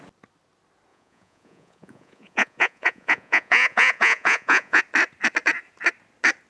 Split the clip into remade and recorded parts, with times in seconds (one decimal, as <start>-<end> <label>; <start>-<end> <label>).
0.0-0.9 recorded; 0.9-4.8 remade; 4.8-6.5 recorded